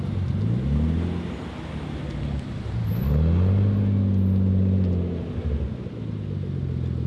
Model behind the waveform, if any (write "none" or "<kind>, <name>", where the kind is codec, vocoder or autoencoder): none